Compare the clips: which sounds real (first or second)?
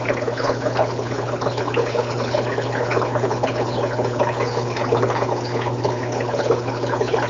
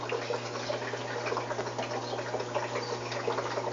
second